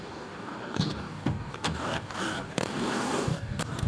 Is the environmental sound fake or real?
fake